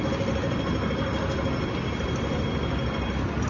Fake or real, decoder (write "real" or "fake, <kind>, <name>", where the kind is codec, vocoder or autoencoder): real